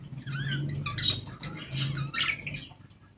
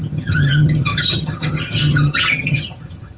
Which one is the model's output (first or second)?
second